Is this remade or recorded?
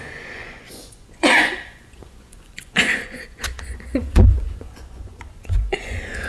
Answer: remade